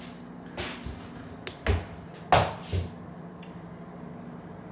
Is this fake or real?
real